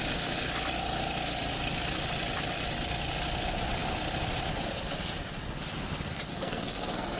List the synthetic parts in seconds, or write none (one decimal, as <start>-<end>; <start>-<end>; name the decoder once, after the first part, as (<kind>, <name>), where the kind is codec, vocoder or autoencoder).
6.3-7.2 (codec, SNAC)